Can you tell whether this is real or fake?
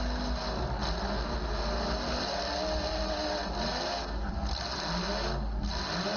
real